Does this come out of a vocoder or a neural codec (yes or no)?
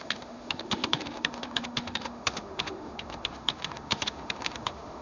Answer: yes